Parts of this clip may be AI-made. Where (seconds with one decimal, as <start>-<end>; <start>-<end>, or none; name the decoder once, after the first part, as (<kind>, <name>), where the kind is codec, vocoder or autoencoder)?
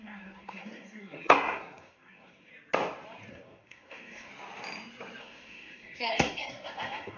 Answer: 0.0-2.5 (codec, SNAC); 3.3-4.3; 5.2-7.2